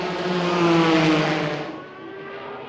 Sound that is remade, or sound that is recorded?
recorded